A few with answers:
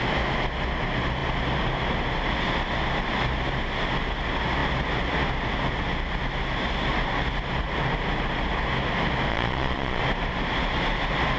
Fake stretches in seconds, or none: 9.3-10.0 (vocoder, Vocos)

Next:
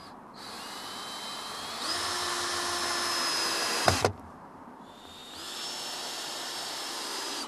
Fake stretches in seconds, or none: 0.0-2.2 (vocoder, BigVGAN v2); 3.5-5.2; 5.9-7.5

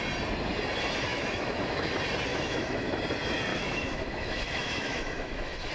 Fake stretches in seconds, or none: 1.1-1.9 (autoencoder, DAC-VAE); 2.3-3.0; 3.5-5.7